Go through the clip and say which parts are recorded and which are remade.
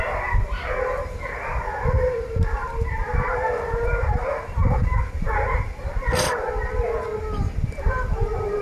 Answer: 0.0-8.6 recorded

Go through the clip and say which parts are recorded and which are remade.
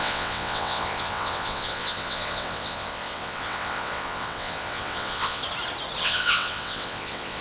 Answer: 0.0-5.4 remade; 5.4-6.0 recorded; 6.0-7.4 remade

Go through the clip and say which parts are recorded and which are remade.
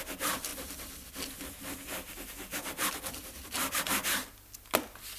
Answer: 0.0-5.2 recorded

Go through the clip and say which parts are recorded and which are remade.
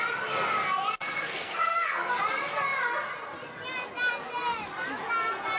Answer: 0.0-1.0 recorded; 1.0-2.2 remade; 2.2-5.6 recorded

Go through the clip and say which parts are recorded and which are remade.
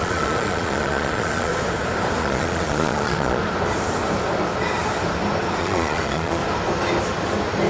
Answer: 0.0-1.5 remade; 1.5-2.2 recorded; 2.2-3.4 remade; 3.4-5.6 recorded; 5.6-6.4 remade; 6.4-7.7 recorded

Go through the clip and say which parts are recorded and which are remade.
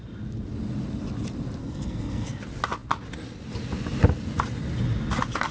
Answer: 0.0-1.6 recorded; 1.6-2.4 remade; 2.4-5.5 recorded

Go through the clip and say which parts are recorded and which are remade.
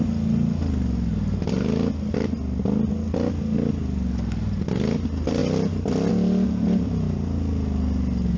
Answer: 0.0-8.4 recorded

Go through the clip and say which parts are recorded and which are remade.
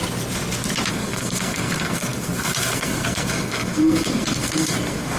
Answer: 0.0-0.9 recorded; 0.9-5.2 remade